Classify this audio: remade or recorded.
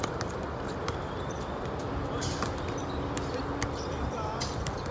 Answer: recorded